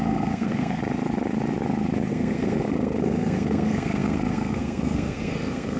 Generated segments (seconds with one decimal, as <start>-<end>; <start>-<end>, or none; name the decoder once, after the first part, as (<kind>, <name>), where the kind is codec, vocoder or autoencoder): 0.0-0.8 (codec, SNAC); 2.1-5.8